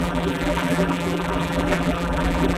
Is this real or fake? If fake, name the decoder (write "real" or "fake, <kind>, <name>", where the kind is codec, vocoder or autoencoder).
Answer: fake, vocoder, BigVGAN v2